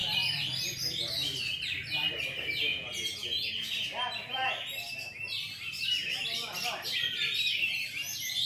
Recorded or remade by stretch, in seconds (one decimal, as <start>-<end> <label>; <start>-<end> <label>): 0.0-2.7 recorded; 2.7-3.5 remade; 3.5-8.5 recorded